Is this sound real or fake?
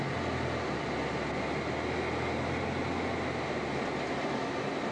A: real